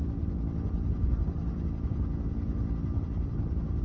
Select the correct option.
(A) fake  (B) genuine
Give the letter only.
B